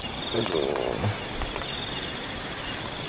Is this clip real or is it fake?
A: real